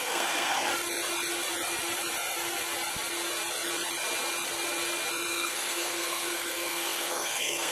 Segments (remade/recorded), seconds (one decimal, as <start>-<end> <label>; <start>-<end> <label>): 0.0-0.7 remade; 0.7-5.3 recorded; 5.3-7.7 remade